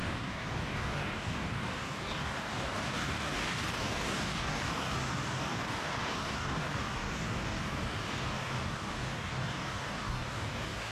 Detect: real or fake fake